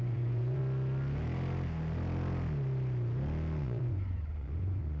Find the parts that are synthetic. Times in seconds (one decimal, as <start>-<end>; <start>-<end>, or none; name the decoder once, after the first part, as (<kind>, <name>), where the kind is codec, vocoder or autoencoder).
0.0-0.6 (vocoder, Vocos); 3.6-5.0

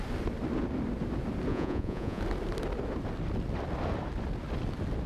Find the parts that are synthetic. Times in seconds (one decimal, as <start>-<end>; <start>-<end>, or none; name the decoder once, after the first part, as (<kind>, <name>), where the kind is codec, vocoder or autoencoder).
1.5-2.2 (vocoder, Vocos)